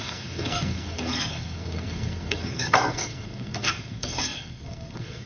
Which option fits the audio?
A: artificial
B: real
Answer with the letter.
A